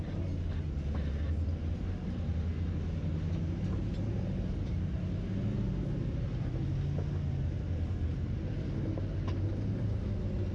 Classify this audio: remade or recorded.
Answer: recorded